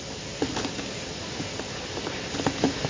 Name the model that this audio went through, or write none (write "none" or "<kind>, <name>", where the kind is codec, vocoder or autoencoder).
none